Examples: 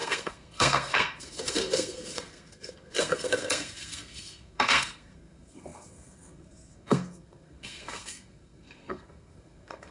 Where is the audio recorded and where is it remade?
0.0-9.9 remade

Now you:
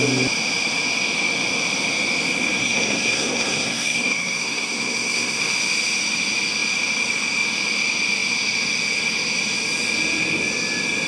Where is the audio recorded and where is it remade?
0.0-2.6 recorded; 2.6-5.5 remade; 5.5-11.1 recorded

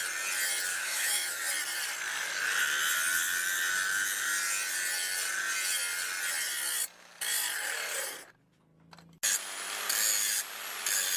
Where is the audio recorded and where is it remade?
0.0-0.7 recorded; 0.7-1.4 remade; 1.4-11.2 recorded